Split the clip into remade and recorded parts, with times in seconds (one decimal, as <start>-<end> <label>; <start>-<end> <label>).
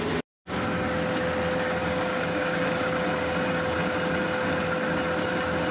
0.0-1.8 recorded; 1.8-3.2 remade; 3.2-5.7 recorded